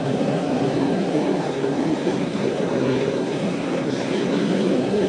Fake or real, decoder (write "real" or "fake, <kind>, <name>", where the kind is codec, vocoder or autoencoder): fake, codec, SNAC